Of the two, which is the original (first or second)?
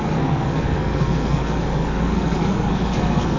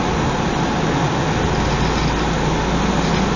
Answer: second